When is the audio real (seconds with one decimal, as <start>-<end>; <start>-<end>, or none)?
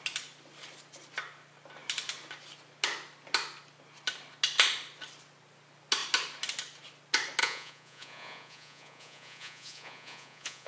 0.0-7.4